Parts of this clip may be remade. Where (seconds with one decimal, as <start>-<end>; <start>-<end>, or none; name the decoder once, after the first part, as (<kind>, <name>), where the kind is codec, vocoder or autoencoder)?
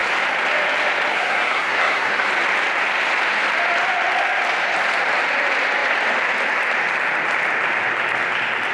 1.1-2.3 (codec, SNAC)